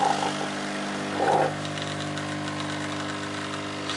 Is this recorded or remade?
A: recorded